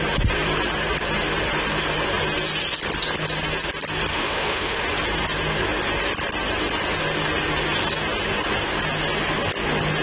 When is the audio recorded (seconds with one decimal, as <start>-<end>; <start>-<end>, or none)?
0.0-4.1; 4.8-10.0